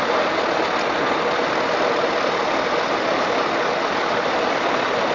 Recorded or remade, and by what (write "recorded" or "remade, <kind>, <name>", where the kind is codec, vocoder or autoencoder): recorded